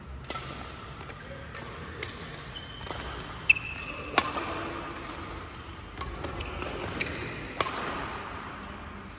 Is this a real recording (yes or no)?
yes